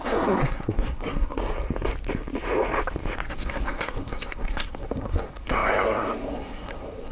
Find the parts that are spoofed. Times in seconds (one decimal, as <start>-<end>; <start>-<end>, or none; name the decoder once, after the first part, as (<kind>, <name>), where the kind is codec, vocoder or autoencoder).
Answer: 0.0-1.4 (codec, SNAC); 3.3-7.1